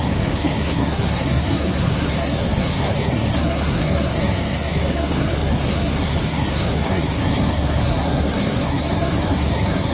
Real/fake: fake